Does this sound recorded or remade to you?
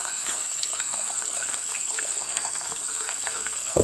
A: remade